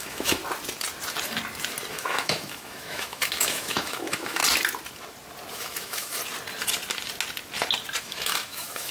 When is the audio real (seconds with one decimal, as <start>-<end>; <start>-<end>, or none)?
0.4-1.9; 4.4-5.5; 6.2-8.0